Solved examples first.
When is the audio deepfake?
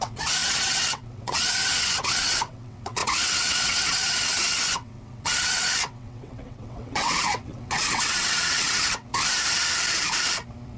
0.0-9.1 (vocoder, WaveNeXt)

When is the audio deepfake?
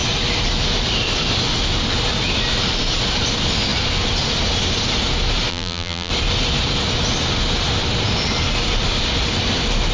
5.5-6.1 (vocoder, BigVGAN v2)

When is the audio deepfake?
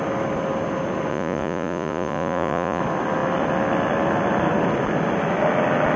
1.1-2.8 (vocoder, Vocos)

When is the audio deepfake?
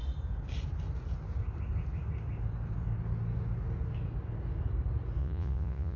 5.2-6.0 (vocoder, Vocos)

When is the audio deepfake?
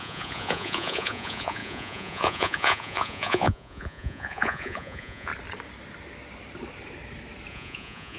0.0-5.3 (vocoder, Vocos); 7.5-8.2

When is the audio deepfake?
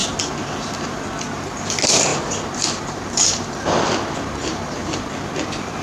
2.1-3.6 (vocoder, BigVGAN v2); 4.4-5.0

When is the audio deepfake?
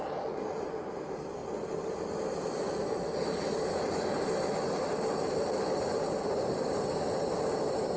none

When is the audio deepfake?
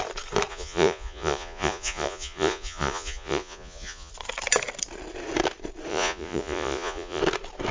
0.5-4.1 (vocoder, Vocos); 5.9-7.2